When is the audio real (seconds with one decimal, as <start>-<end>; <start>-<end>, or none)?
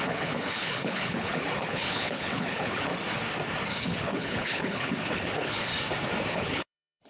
2.9-3.7; 5.7-6.3